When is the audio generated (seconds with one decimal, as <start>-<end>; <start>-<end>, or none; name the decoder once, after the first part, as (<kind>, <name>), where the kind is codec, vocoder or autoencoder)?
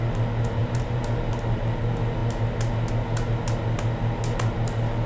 0.6-1.3 (vocoder, BigVGAN v2)